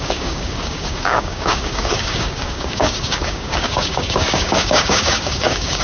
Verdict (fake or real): fake